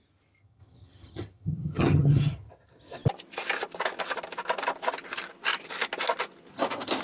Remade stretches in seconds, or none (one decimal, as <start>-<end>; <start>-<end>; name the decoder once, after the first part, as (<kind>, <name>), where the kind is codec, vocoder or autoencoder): 0.4-2.5 (vocoder, HiFi-GAN)